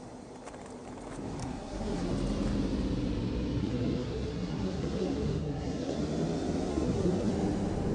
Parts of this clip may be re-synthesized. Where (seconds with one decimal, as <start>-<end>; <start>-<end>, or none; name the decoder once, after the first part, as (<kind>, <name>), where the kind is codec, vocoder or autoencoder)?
1.4-2.1 (codec, SNAC); 3.6-6.0; 6.7-7.3